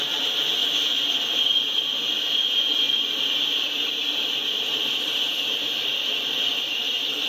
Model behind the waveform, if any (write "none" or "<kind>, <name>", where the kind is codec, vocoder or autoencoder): none